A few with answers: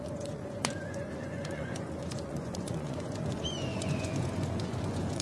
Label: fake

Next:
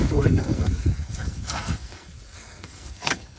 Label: fake